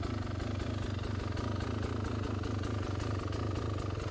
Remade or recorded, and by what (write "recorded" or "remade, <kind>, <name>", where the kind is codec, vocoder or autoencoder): recorded